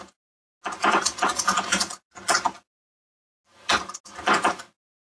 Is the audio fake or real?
real